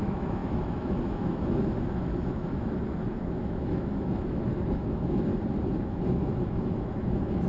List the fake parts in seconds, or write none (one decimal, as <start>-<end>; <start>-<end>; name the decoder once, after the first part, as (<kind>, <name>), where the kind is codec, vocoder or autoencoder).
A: 0.0-5.3 (autoencoder, DAC-VAE); 5.8-7.5